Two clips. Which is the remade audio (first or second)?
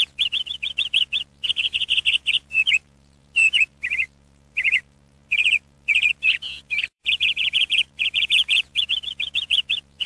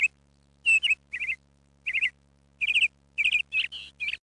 first